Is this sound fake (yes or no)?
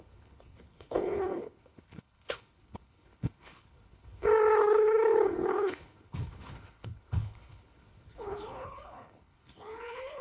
yes